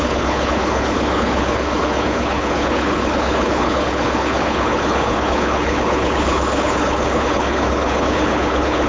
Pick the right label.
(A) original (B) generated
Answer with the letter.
B